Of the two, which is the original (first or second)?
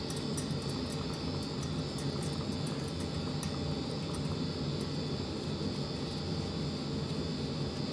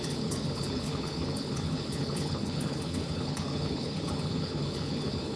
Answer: first